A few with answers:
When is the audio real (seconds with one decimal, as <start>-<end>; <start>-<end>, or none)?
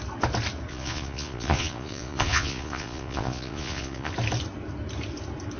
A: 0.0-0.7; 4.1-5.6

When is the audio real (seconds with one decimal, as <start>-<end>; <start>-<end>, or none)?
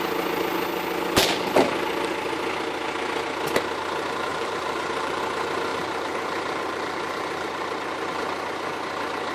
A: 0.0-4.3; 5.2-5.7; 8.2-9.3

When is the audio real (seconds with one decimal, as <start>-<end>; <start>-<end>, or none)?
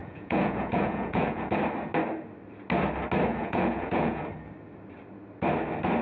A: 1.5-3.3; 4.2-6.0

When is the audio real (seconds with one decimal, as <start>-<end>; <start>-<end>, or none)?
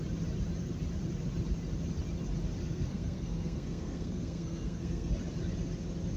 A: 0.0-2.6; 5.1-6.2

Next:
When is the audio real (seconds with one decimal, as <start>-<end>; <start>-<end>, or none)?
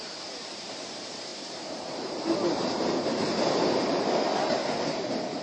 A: 4.3-4.9